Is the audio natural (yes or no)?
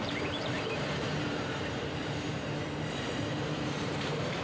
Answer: no